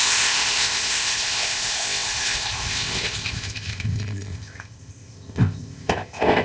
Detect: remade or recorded remade